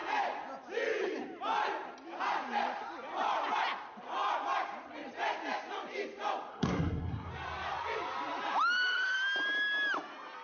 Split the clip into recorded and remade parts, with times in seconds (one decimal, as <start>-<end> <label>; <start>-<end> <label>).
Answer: 0.0-6.5 recorded; 6.5-7.3 remade; 7.3-10.4 recorded